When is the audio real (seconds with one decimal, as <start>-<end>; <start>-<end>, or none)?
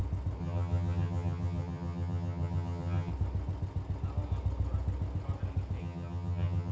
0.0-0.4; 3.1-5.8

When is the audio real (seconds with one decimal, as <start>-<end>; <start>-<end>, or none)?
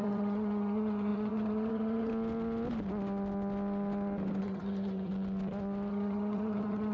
2.1-4.4; 5.1-5.9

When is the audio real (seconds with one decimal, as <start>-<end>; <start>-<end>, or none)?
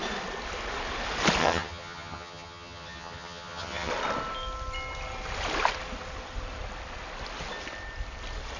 0.0-1.4; 3.9-8.6